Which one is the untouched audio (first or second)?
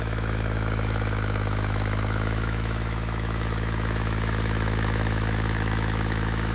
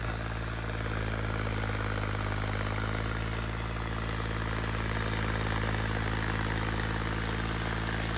second